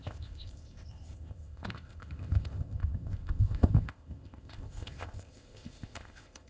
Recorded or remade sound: remade